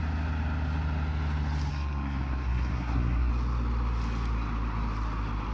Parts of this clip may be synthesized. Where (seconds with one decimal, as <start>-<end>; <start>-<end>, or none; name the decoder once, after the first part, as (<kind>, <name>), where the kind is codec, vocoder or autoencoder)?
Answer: 1.7-3.3 (codec, SNAC)